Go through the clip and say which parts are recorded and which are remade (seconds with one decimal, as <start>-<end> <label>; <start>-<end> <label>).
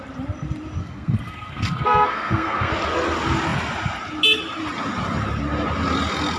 0.0-0.8 recorded; 0.8-2.7 remade; 2.7-6.4 recorded